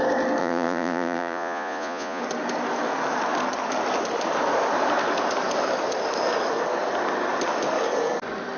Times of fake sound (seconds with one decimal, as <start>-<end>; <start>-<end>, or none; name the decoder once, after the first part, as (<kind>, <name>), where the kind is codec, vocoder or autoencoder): 0.4-2.2 (vocoder, Vocos)